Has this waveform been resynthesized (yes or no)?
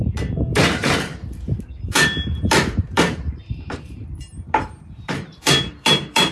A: yes